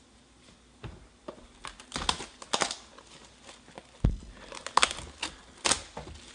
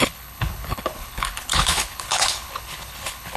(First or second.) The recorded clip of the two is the first